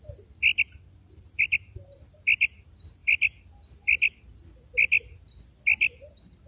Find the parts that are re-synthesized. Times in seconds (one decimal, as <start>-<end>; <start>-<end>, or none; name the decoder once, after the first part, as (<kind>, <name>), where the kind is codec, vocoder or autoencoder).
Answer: 0.5-2.2 (vocoder, BigVGAN v2); 3.0-4.1